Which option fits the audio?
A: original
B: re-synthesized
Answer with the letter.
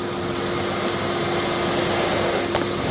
A